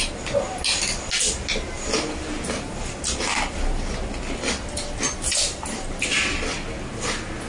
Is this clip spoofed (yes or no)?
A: no